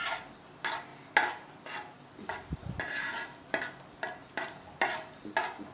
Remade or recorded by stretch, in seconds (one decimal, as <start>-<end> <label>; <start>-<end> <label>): 0.0-5.7 recorded